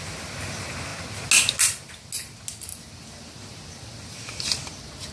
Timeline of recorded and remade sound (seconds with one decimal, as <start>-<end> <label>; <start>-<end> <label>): 0.0-5.1 recorded